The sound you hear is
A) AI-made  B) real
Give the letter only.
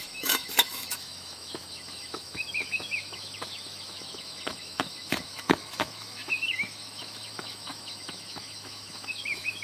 A